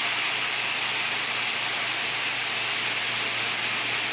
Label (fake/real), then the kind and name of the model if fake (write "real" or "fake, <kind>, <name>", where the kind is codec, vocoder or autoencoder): real